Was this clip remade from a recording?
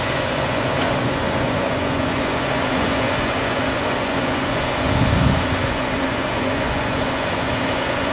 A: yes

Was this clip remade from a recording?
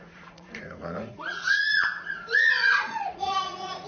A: yes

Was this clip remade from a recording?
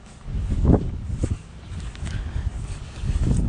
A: yes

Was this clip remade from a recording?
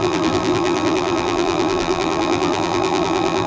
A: yes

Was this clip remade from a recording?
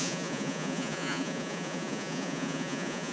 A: yes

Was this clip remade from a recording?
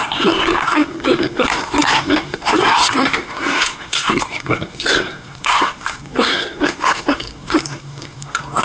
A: yes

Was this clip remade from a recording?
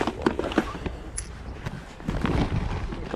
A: no